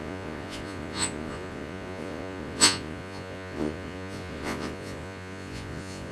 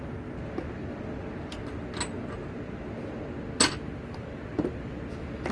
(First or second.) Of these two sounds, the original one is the second